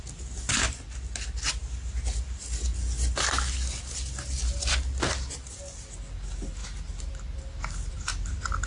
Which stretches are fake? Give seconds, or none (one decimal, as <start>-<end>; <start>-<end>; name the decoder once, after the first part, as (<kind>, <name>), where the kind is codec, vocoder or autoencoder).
none